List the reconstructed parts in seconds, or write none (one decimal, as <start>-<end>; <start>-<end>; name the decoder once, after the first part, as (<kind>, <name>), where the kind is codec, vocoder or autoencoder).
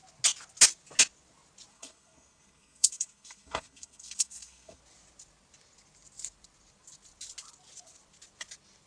1.7-4.8 (codec, SNAC)